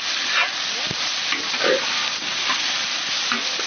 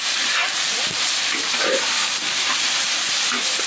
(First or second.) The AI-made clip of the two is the second